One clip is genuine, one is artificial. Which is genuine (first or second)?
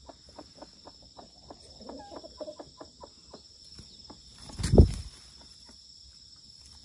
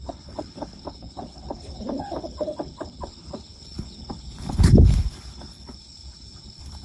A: first